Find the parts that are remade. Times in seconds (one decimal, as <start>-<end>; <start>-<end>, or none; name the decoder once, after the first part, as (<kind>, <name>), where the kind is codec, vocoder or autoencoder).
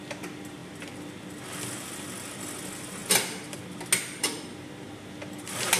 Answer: none